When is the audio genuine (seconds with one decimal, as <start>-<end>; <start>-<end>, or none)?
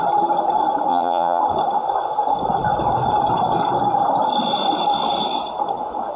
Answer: 0.0-0.9; 1.4-6.2